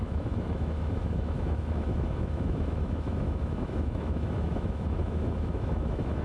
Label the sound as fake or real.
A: fake